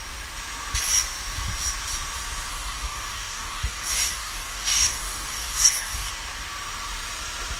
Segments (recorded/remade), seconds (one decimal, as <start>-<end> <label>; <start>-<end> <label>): 0.0-2.5 recorded; 2.5-6.1 remade; 6.1-7.6 recorded